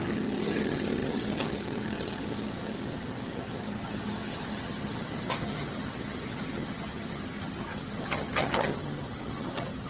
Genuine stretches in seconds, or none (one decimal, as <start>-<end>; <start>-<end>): none